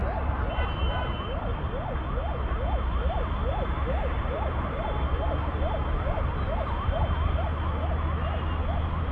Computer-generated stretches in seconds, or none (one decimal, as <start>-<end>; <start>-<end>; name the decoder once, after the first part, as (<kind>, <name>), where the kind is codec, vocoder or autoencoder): 0.0-1.5 (vocoder, BigVGAN v2); 3.5-7.5